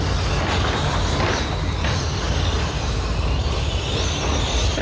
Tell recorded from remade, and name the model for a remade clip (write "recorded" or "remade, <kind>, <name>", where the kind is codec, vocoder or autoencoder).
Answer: recorded